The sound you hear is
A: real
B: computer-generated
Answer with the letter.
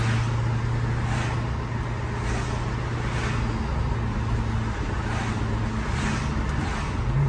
A